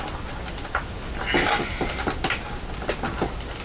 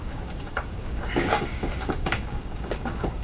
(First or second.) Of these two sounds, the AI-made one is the second